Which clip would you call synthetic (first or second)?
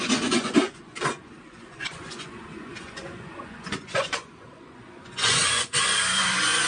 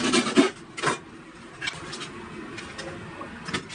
first